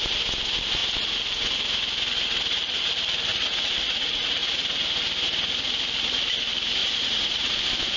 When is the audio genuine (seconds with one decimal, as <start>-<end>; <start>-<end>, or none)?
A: 0.0-3.3; 4.8-6.8; 7.6-8.0